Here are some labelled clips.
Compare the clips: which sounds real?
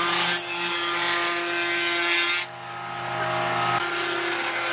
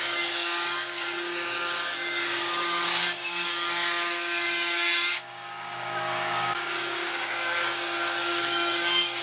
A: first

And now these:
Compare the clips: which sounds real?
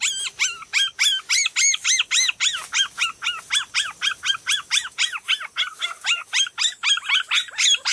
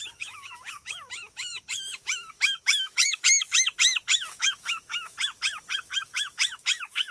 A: first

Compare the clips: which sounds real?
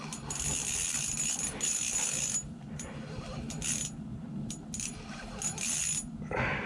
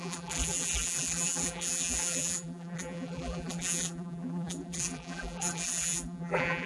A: first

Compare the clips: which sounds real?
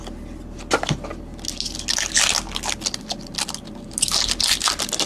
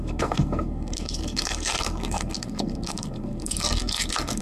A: first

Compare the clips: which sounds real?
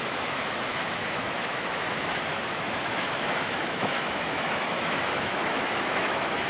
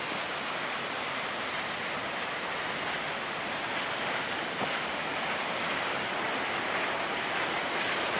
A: second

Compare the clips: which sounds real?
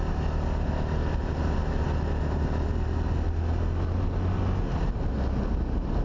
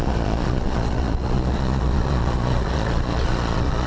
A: first